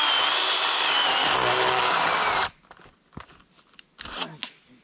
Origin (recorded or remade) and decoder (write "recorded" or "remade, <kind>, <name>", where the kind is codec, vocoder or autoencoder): recorded